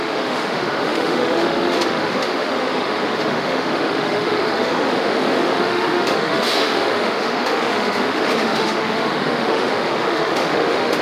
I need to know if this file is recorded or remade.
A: remade